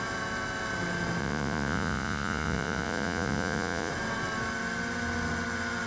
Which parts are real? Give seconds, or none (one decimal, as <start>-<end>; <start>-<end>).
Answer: 0.0-1.2; 3.9-5.9